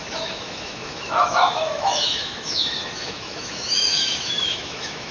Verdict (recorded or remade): remade